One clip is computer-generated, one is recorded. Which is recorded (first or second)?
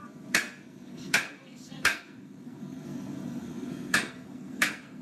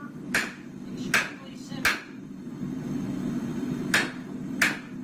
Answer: second